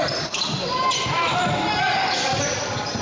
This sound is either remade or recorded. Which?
recorded